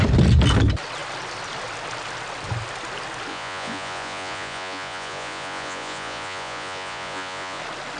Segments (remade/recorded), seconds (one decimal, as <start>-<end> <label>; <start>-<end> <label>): 0.0-3.3 recorded; 3.3-7.6 remade; 7.6-8.0 recorded